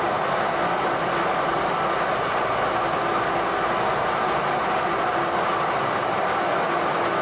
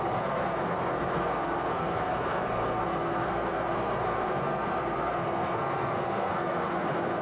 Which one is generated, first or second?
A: second